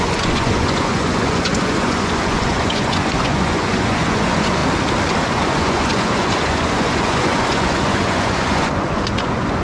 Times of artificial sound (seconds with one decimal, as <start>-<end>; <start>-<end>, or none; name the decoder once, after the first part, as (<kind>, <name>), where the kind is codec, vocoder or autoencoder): 0.0-4.6 (vocoder, Vocos); 5.2-9.6